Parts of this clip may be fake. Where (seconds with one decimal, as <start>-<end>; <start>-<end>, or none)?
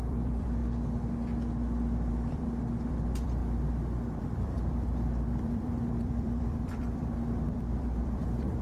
0.0-0.6; 2.1-3.4; 4.2-8.6